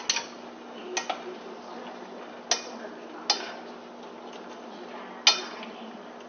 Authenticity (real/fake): real